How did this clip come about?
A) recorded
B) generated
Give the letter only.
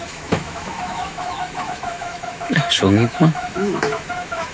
B